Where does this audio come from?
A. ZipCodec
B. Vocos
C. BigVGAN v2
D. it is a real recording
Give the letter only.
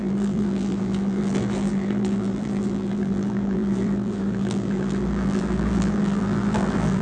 C